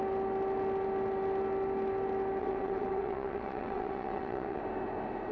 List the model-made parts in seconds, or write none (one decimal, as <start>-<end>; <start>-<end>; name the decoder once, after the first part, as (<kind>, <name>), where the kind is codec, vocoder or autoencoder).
2.4-4.6 (vocoder, WaveNeXt)